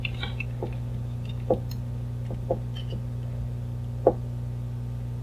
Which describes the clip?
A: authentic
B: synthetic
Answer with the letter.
A